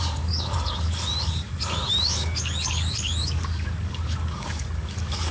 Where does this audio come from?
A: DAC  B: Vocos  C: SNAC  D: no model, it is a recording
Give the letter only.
A